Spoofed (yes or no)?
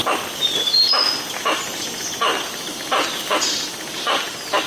no